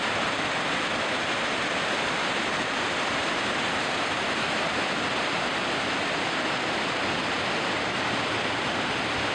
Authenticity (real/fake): fake